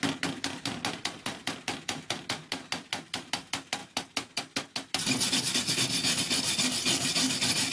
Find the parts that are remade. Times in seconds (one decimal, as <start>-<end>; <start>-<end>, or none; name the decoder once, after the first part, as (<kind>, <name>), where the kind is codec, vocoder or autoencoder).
none